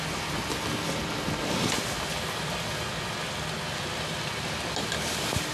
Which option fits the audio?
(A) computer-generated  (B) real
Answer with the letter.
B